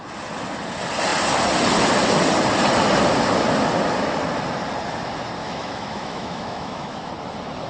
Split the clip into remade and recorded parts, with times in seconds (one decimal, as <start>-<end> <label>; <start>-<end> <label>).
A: 0.0-5.4 recorded; 5.4-7.1 remade; 7.1-7.7 recorded